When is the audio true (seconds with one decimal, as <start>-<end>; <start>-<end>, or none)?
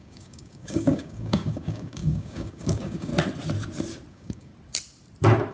3.1-4.1; 4.5-5.5